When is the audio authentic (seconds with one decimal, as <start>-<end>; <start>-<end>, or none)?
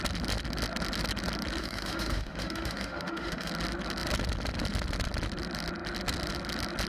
0.0-1.6; 3.5-6.9